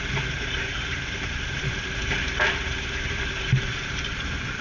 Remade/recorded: remade